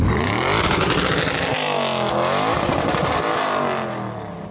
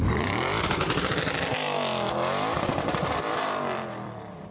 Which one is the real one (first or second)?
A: first